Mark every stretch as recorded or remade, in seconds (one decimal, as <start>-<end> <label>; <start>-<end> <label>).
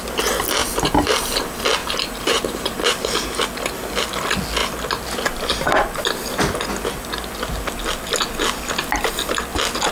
0.0-0.6 recorded; 0.6-1.4 remade; 1.4-1.8 recorded; 1.8-3.4 remade; 3.4-9.9 recorded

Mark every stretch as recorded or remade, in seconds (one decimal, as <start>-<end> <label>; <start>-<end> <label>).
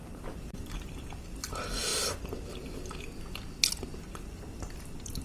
0.0-1.0 remade; 1.0-5.2 recorded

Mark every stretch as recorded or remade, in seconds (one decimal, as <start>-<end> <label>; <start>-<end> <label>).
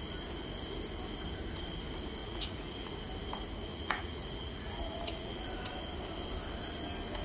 0.0-2.2 recorded; 2.2-2.9 remade; 2.9-3.7 recorded; 3.7-5.5 remade; 5.5-7.2 recorded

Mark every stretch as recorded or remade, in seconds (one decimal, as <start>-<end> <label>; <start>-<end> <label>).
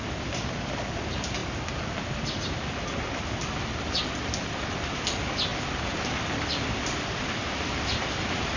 0.0-8.6 recorded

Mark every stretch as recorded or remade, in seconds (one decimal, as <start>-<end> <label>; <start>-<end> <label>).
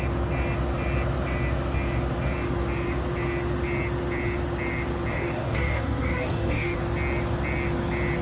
0.0-5.1 recorded; 5.1-6.8 remade; 6.8-8.2 recorded